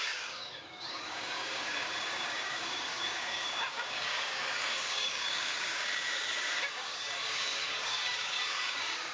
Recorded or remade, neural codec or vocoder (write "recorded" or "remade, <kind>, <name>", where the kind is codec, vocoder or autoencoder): remade, codec, DAC